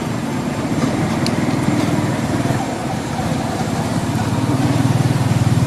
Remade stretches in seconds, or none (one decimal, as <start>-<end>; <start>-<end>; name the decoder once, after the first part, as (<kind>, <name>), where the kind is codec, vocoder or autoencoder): 0.0-3.9 (vocoder, BigVGAN v2); 4.8-5.7